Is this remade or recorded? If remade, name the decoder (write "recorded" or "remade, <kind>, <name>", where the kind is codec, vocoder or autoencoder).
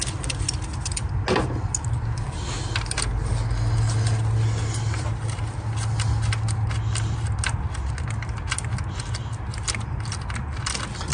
recorded